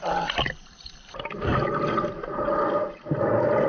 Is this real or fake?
real